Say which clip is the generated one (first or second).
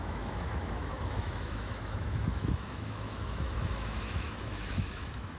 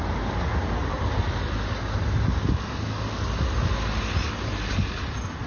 first